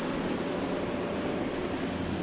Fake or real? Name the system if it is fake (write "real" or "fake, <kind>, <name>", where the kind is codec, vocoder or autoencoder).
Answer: real